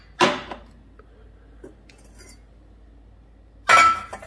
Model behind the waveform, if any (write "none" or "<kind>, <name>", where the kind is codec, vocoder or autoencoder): none